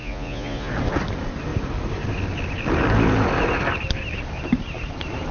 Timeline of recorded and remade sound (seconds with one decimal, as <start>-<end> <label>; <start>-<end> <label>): 0.0-0.7 remade; 0.7-5.3 recorded